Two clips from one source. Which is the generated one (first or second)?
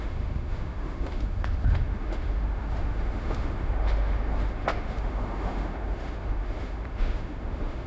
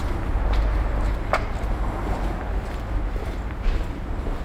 first